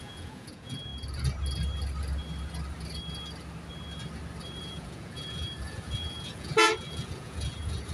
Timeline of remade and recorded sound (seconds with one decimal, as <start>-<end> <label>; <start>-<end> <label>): 0.0-0.9 remade; 0.9-4.6 recorded; 4.6-7.9 remade